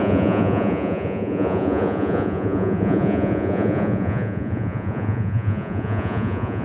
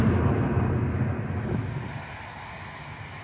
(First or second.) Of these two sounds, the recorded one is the second